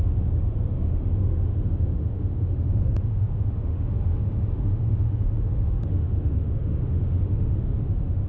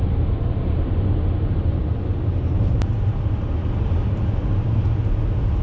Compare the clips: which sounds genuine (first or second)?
second